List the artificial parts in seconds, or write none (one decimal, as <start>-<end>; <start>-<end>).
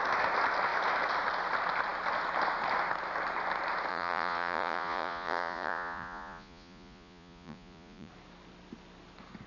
3.9-8.1